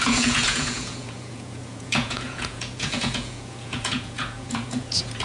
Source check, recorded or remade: remade